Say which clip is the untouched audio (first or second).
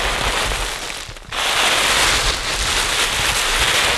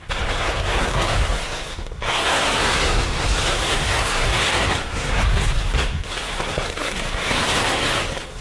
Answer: first